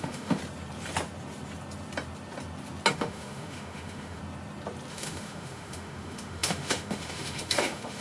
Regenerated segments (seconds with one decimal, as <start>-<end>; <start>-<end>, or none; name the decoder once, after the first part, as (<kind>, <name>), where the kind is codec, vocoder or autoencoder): 0.0-0.4 (autoencoder, DAC-VAE); 2.9-4.2; 4.9-8.0